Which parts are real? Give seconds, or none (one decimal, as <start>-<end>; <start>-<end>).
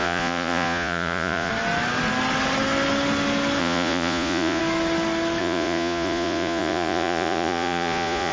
1.5-3.6; 4.6-5.4